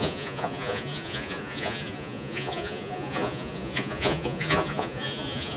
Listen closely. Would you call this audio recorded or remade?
remade